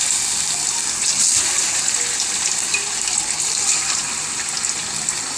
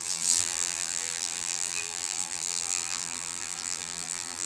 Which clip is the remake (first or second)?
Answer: second